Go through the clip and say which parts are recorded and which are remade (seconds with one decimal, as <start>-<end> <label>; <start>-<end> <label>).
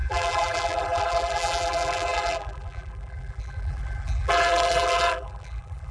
0.0-5.9 remade